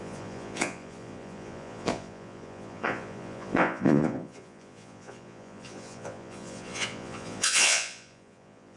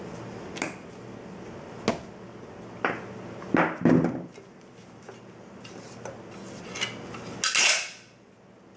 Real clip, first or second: second